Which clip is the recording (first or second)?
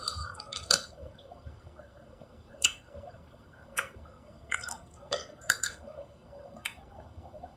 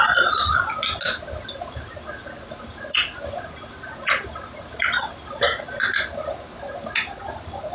second